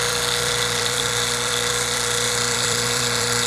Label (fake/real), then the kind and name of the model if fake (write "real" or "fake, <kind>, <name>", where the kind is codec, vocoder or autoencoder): fake, vocoder, BigVGAN v2